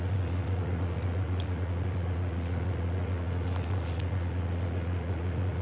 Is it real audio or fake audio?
fake